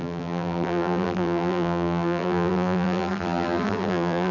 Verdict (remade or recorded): remade